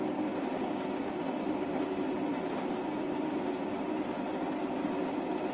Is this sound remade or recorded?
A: recorded